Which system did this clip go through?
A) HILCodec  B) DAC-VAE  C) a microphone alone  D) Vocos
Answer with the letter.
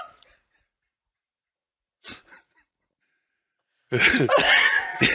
D